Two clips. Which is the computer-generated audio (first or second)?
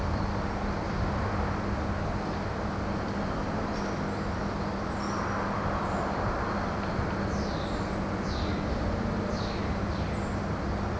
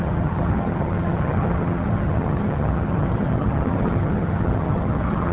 second